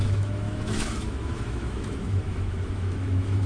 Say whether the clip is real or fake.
fake